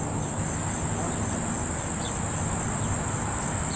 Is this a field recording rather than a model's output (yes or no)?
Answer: yes